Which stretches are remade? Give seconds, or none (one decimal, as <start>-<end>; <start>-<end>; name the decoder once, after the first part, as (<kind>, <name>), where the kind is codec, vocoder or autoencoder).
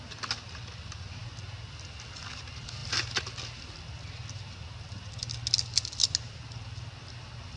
none